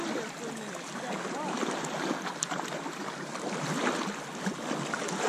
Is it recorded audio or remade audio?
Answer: recorded